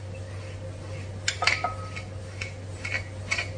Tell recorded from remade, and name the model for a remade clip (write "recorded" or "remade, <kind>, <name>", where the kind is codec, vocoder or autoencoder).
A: recorded